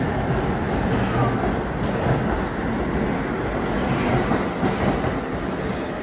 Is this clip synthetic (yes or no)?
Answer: no